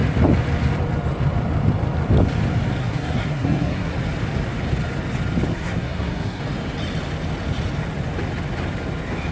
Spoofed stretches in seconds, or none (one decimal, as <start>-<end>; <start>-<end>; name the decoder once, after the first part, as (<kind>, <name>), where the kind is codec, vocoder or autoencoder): 2.8-3.9 (codec, SNAC); 5.5-6.4